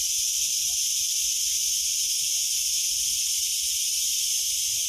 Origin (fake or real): real